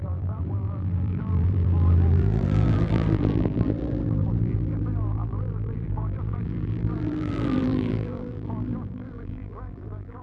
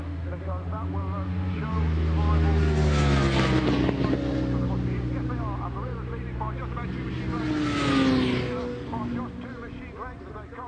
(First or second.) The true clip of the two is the second